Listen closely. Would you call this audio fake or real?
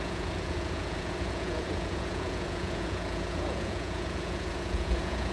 fake